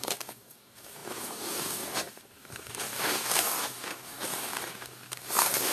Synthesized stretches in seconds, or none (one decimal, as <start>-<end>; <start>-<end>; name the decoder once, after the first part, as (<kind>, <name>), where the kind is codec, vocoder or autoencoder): 0.0-5.7 (codec, DAC)